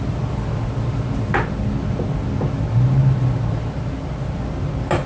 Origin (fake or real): real